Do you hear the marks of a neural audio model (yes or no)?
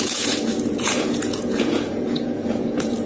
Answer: yes